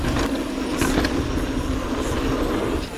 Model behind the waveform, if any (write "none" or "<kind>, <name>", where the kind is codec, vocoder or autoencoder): none